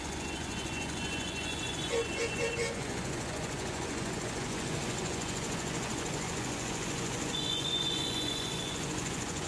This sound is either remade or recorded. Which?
remade